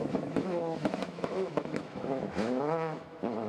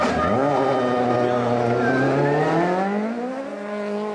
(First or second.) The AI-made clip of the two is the first